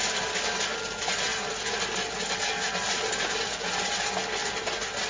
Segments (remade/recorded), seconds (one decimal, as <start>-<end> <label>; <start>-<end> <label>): 0.0-5.1 recorded